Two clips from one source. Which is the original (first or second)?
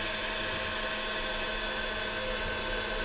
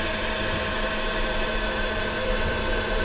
first